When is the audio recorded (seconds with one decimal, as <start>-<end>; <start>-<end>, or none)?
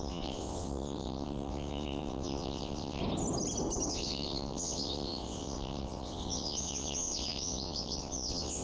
3.0-3.9